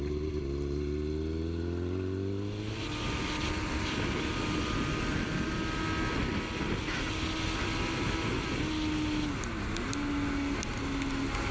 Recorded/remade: recorded